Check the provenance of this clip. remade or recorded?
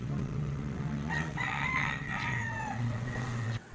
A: remade